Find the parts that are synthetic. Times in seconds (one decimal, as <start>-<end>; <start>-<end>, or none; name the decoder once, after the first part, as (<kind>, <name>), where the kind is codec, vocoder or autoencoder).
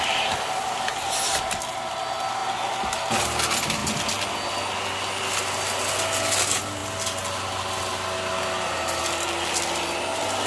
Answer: none